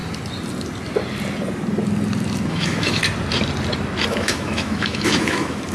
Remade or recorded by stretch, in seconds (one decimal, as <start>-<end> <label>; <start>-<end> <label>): 0.0-2.5 recorded; 2.5-3.0 remade; 3.0-4.1 recorded; 4.1-5.7 remade